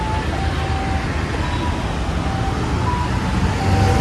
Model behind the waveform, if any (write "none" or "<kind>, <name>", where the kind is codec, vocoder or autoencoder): none